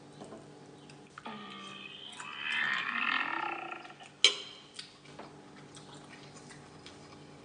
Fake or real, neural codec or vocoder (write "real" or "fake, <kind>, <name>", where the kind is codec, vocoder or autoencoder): real